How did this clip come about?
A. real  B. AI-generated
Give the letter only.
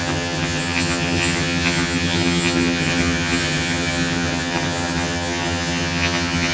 B